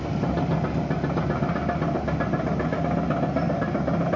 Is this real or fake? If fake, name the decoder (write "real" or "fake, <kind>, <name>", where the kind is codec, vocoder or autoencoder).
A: real